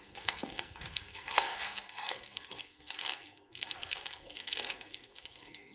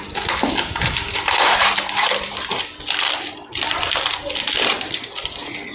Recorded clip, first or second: second